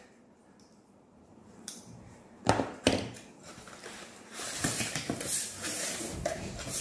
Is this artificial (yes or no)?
yes